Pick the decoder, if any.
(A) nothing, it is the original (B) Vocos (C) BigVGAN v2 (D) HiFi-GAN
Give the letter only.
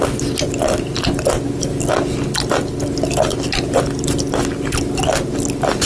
A